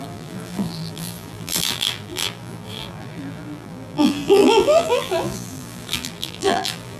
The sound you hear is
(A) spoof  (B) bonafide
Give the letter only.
A